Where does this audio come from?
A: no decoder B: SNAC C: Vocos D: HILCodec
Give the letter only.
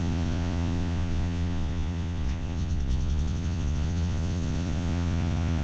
C